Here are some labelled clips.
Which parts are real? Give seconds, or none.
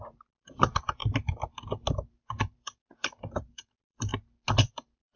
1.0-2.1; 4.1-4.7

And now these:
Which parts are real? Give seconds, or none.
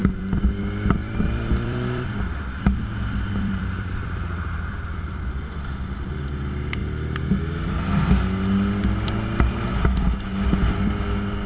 0.6-1.0; 6.1-11.5